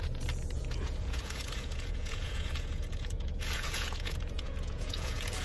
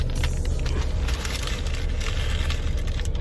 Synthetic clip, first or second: first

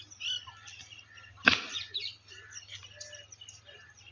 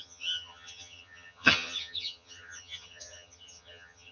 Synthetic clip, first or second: second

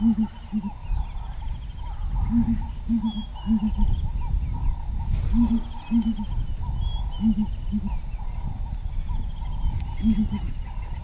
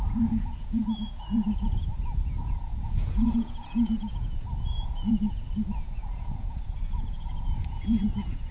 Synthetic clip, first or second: second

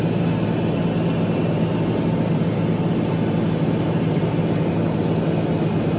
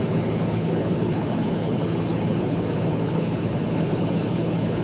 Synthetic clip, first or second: second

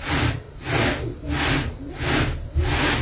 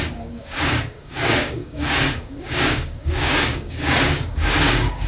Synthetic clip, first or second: second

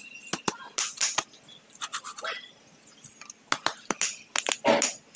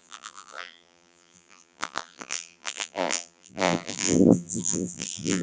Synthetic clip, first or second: second